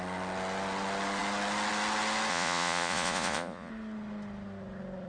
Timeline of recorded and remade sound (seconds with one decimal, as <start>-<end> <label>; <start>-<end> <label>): 0.0-2.3 recorded; 2.3-3.7 remade; 3.7-5.1 recorded